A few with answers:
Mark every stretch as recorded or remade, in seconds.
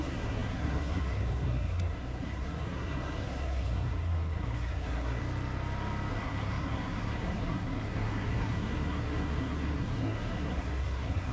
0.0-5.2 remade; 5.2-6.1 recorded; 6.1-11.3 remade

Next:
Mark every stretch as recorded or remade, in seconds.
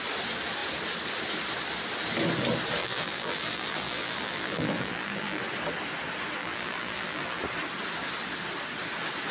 0.0-2.8 recorded; 2.8-5.4 remade; 5.4-6.4 recorded; 6.4-7.4 remade; 7.4-9.3 recorded